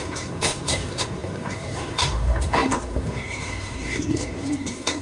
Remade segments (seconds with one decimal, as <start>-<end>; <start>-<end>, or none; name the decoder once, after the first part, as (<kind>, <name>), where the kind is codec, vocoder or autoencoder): 0.0-5.0 (codec, SNAC)